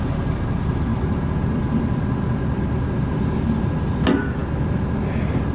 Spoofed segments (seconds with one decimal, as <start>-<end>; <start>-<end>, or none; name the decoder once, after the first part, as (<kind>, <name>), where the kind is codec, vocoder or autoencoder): none